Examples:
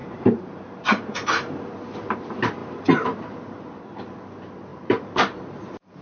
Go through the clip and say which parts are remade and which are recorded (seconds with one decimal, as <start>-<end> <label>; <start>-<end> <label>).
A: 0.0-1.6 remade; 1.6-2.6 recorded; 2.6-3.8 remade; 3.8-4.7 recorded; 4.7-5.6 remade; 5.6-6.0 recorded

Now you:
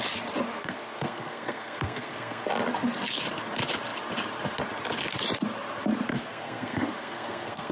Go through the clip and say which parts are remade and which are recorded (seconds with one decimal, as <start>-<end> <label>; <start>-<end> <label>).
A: 0.0-0.6 recorded; 0.6-2.5 remade; 2.5-6.1 recorded; 6.1-7.7 remade

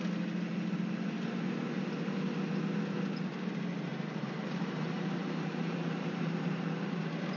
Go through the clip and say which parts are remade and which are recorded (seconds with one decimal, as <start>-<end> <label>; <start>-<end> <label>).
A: 0.0-3.9 recorded; 3.9-7.0 remade; 7.0-7.4 recorded

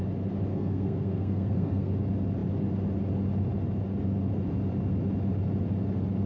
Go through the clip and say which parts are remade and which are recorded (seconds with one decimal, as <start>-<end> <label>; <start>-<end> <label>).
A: 0.0-0.5 recorded; 0.5-1.9 remade; 1.9-6.3 recorded